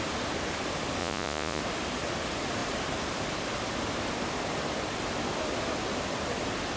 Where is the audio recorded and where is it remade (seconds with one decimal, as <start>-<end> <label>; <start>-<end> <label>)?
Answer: 0.0-1.0 recorded; 1.0-1.6 remade; 1.6-6.8 recorded